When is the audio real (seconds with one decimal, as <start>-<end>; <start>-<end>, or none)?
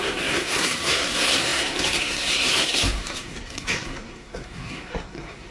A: none